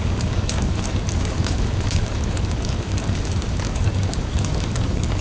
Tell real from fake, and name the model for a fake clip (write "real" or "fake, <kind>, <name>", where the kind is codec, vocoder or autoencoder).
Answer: fake, codec, DAC